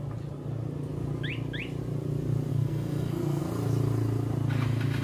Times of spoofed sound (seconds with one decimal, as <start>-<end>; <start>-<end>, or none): 2.5-3.4